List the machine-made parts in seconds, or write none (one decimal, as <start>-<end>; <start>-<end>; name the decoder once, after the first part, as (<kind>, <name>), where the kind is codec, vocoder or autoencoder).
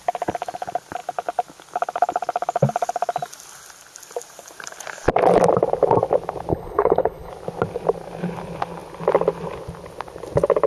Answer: 6.5-7.3 (codec, HILCodec)